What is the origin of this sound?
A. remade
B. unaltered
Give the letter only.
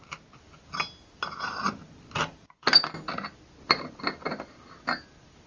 B